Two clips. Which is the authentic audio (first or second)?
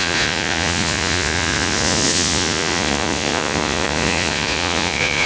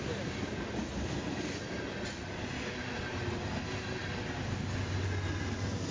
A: second